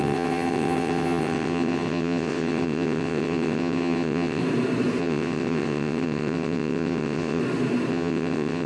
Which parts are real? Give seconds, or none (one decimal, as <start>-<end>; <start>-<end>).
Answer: 4.4-5.0; 7.4-7.9